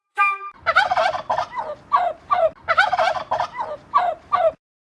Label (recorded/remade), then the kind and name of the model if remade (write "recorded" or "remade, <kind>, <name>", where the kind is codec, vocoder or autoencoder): recorded